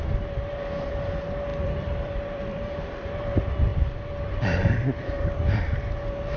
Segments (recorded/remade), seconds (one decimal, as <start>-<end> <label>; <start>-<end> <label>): 0.0-1.5 recorded; 1.5-3.1 remade; 3.1-3.7 recorded; 3.7-5.6 remade; 5.6-6.4 recorded